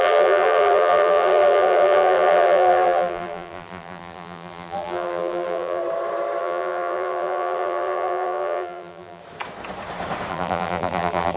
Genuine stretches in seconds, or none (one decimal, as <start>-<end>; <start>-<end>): 5.8-6.4; 9.2-10.3